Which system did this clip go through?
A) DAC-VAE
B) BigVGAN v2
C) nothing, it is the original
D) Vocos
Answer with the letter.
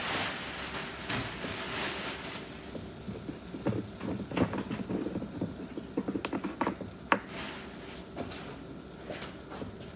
C